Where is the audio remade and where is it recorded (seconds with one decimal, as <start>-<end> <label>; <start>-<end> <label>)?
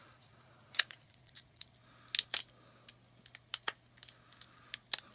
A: 0.0-1.7 remade; 1.7-5.1 recorded